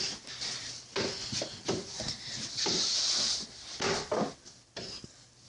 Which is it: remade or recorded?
recorded